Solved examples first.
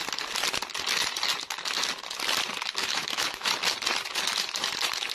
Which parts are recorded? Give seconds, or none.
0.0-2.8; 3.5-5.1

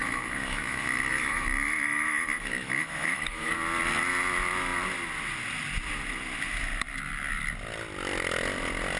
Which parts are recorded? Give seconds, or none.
3.5-9.0

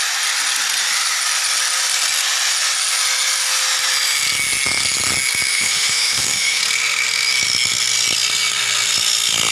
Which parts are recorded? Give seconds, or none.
0.0-5.5; 6.6-9.5